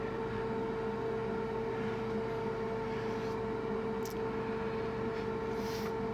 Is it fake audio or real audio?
real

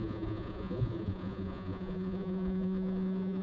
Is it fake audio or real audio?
fake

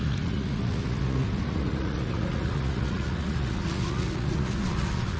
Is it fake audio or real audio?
fake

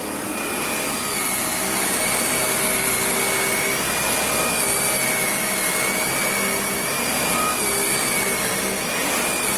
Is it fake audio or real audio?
real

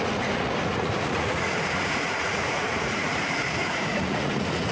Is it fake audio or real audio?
fake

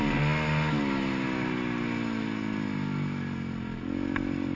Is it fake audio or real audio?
real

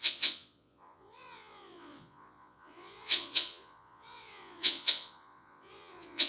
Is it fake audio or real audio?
fake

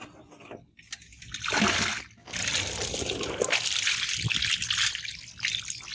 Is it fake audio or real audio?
real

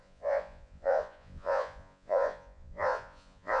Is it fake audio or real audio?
fake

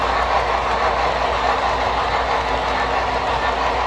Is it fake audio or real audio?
real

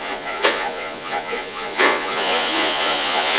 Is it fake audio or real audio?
fake